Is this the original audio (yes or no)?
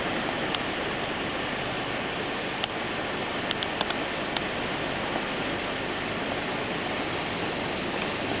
no